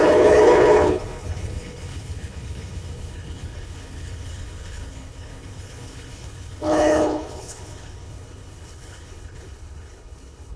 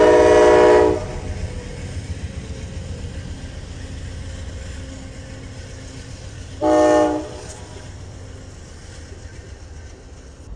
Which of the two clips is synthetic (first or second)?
first